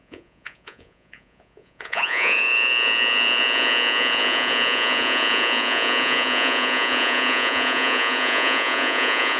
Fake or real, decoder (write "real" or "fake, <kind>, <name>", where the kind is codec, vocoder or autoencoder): fake, vocoder, Vocos